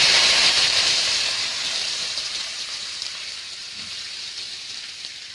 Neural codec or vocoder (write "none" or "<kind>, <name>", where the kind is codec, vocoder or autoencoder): vocoder, BigVGAN v2